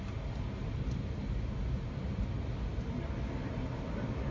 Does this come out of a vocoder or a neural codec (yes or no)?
no